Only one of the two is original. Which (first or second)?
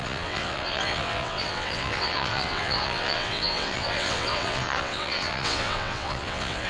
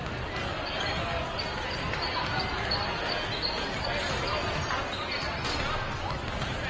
second